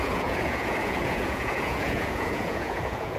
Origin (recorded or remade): remade